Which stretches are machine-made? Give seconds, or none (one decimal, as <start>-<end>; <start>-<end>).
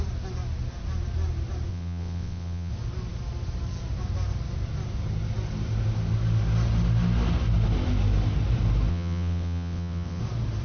1.7-2.7; 8.9-10.2